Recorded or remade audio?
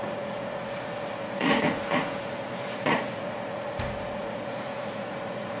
remade